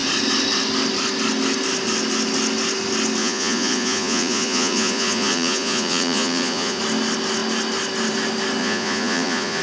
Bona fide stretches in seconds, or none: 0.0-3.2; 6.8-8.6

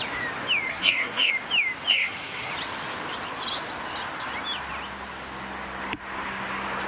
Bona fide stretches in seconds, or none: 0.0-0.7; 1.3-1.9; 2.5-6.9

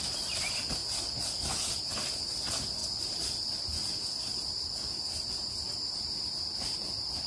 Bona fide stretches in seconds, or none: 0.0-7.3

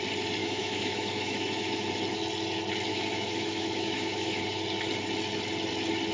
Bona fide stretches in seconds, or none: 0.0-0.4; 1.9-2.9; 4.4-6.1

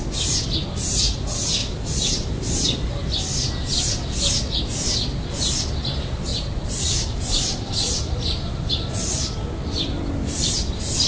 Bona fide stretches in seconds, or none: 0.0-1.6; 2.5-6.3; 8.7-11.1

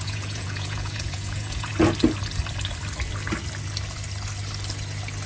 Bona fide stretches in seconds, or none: 1.7-5.3

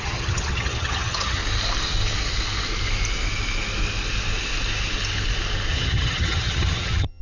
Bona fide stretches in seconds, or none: 1.4-5.7

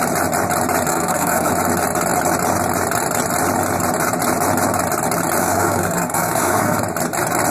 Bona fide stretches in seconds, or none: 0.0-0.9; 1.5-5.4; 6.8-7.5